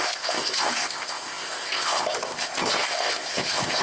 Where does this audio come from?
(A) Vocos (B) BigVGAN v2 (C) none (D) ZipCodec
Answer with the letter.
D